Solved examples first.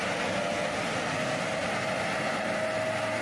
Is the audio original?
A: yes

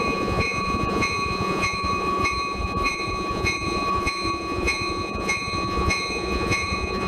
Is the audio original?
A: no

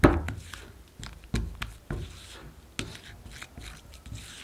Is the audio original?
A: yes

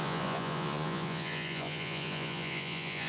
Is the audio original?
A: no